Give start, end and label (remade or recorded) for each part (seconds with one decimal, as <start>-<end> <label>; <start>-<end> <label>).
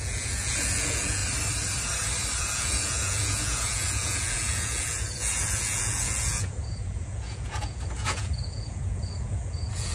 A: 0.0-1.2 remade; 1.2-2.4 recorded; 2.4-9.9 remade